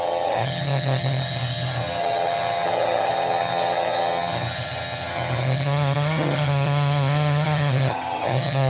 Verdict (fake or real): fake